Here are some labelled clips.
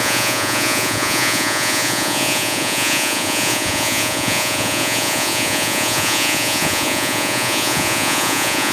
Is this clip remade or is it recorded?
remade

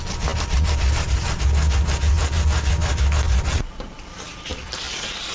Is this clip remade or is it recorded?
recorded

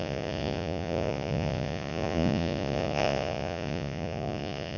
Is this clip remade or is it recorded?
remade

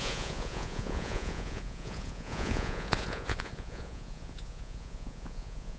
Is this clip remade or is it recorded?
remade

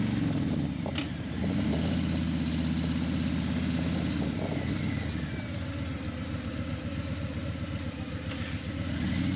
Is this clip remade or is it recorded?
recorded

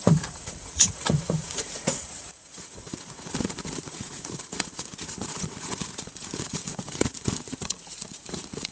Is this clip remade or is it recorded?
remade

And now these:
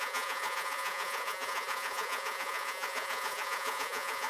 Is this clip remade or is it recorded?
remade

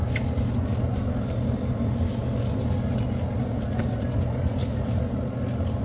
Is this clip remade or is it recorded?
recorded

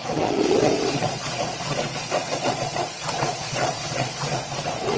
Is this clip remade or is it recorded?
remade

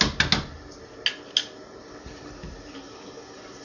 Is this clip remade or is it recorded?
recorded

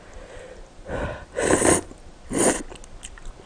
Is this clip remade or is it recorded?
recorded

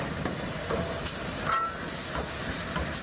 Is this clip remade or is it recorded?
recorded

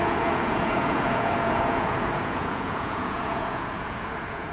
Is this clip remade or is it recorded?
remade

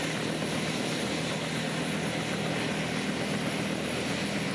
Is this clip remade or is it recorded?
recorded